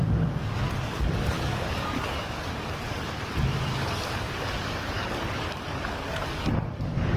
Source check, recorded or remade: remade